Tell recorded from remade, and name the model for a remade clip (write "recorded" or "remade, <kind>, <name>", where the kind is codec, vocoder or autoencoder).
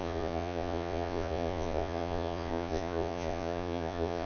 remade, vocoder, Vocos